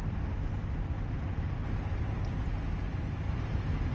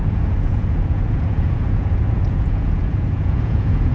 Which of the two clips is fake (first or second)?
second